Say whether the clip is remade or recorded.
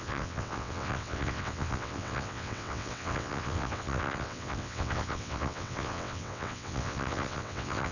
remade